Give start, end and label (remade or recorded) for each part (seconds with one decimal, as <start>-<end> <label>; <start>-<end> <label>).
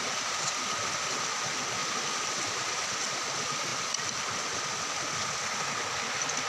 0.0-6.5 recorded